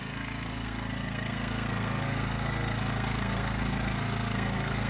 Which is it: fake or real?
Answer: fake